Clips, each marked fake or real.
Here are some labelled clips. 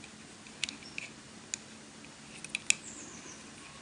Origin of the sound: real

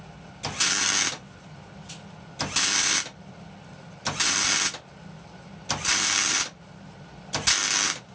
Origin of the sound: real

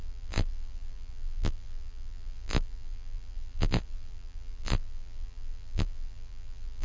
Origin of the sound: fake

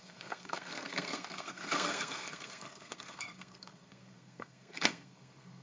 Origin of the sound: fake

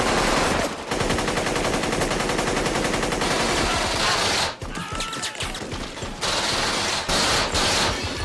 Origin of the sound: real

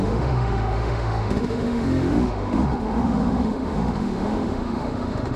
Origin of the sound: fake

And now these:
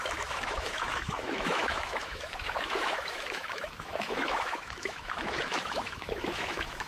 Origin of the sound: fake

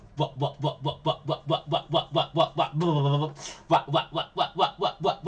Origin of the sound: real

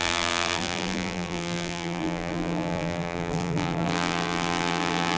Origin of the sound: fake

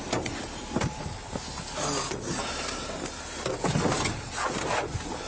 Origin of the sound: real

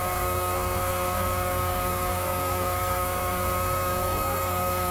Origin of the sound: fake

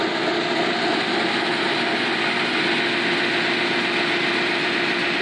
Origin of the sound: real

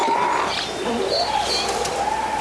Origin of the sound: real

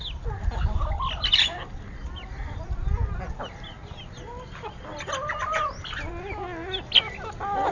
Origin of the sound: real